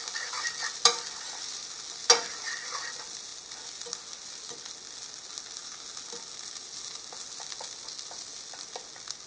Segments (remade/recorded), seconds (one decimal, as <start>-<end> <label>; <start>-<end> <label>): 0.0-9.3 recorded